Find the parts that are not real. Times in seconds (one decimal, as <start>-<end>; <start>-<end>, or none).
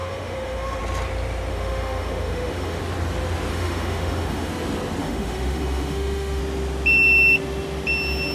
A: 0.0-0.8; 1.5-2.8; 3.5-4.5; 5.0-6.4